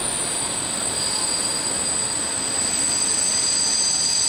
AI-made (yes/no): no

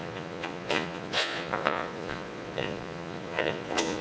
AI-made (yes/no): yes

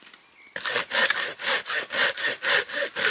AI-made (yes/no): no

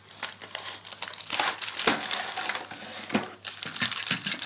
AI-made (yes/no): no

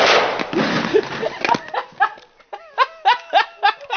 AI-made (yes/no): no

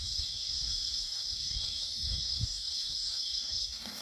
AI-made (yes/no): yes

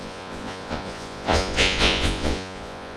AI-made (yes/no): yes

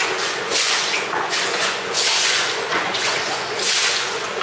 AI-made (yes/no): yes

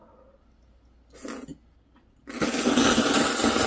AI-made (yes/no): no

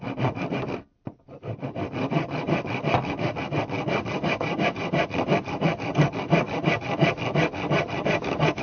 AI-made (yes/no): yes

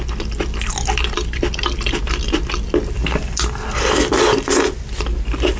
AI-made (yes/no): no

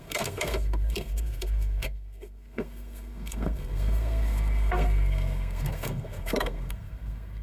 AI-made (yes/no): yes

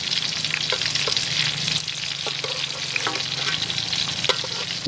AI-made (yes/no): no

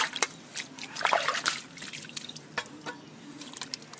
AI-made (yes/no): no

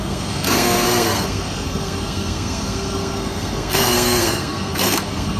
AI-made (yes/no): yes